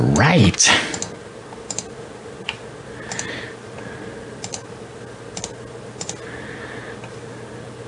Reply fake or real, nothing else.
real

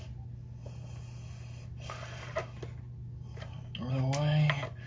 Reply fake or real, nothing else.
real